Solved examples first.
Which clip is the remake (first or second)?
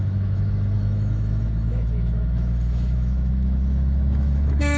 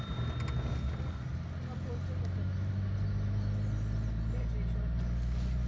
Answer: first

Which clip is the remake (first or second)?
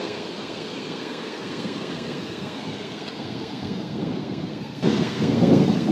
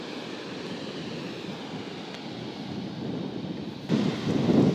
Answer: first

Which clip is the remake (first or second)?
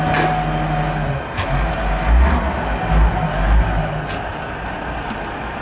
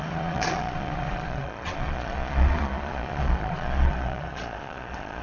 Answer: second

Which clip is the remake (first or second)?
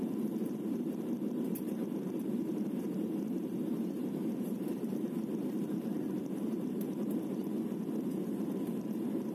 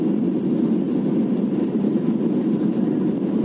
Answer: first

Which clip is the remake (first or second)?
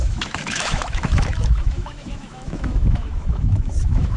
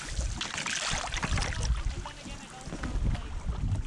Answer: first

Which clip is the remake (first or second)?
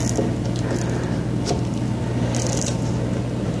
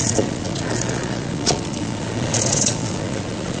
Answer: second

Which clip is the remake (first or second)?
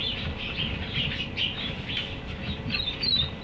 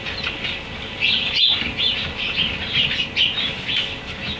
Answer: first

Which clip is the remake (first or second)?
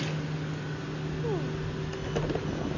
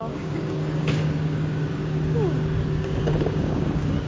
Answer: second